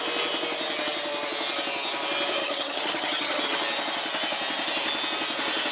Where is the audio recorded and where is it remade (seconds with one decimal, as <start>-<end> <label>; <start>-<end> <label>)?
0.0-2.4 recorded; 2.4-3.4 remade; 3.4-5.7 recorded